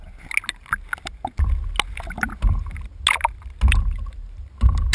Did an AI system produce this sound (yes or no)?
no